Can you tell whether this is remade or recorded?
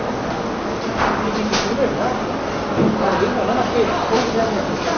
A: recorded